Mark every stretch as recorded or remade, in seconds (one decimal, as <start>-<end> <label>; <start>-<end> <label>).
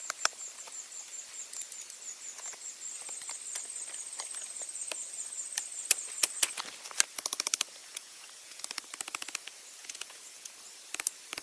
0.0-7.8 recorded; 7.8-8.6 remade; 8.6-9.8 recorded; 9.8-10.5 remade; 10.5-11.4 recorded